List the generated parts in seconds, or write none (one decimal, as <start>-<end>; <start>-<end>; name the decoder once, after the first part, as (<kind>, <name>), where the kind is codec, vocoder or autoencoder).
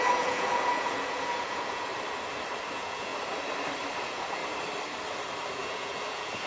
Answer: 0.0-1.9 (vocoder, Vocos); 2.7-3.1; 4.0-4.4; 5.5-6.5